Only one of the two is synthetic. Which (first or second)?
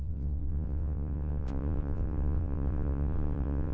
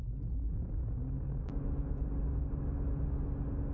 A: first